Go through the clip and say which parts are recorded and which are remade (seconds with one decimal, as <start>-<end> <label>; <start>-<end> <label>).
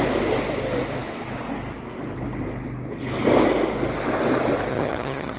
0.0-4.7 recorded; 4.7-5.4 remade